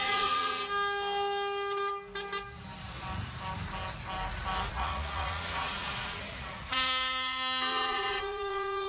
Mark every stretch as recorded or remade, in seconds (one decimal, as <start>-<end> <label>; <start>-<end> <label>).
0.0-0.6 remade; 0.6-4.7 recorded; 4.7-8.9 remade